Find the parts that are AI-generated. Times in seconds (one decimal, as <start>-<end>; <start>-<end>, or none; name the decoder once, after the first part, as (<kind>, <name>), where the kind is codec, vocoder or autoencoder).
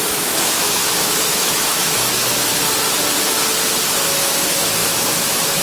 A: 0.0-2.5 (autoencoder, DAC-VAE); 4.0-5.6